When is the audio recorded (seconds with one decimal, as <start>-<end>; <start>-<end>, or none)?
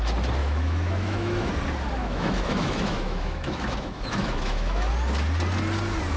0.0-0.4; 1.5-2.0; 4.9-6.2